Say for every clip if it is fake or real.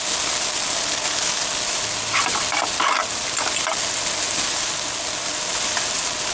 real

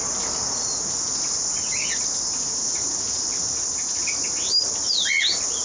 real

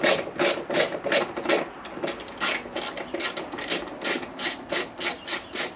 real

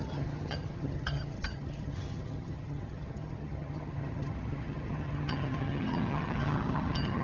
fake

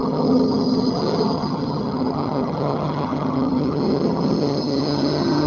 fake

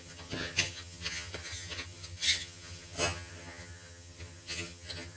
fake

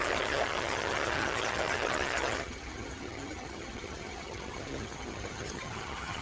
fake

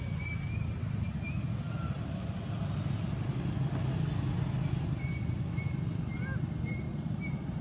real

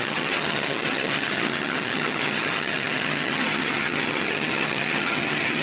fake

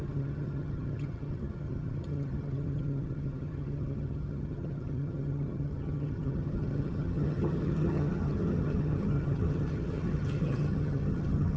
fake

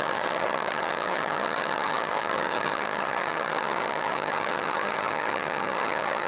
fake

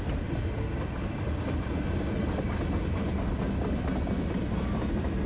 real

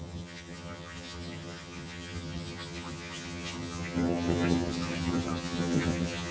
fake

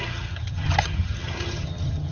fake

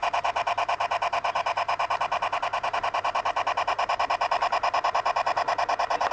real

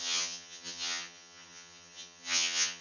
fake